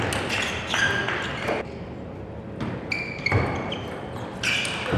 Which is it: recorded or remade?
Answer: recorded